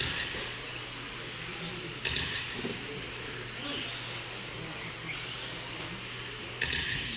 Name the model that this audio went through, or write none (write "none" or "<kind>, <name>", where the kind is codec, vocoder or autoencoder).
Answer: none